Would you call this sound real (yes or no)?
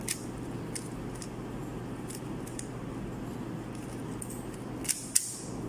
yes